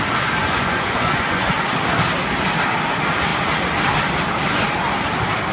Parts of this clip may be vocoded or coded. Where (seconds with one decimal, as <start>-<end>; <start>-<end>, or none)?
0.4-1.5